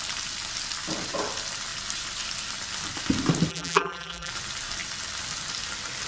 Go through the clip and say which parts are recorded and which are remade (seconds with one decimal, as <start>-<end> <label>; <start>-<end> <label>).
0.0-3.5 recorded; 3.5-4.3 remade; 4.3-6.1 recorded